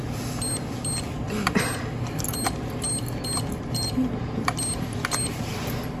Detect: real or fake real